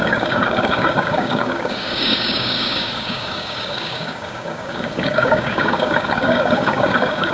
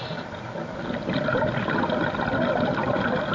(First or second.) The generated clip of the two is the first